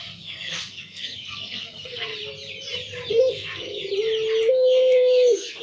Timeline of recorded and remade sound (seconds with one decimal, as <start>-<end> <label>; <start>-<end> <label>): 0.0-2.1 remade; 2.1-3.1 recorded; 3.1-3.8 remade; 3.8-4.5 recorded; 4.5-5.6 remade